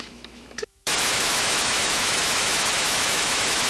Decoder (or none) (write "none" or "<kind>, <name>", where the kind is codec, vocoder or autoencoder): autoencoder, DAC-VAE